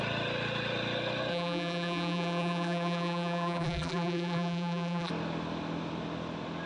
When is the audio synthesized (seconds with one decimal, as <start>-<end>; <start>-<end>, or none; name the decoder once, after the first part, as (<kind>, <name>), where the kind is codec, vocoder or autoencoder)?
1.3-5.1 (vocoder, BigVGAN v2)